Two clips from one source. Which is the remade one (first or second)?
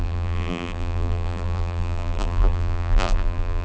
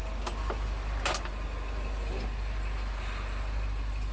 first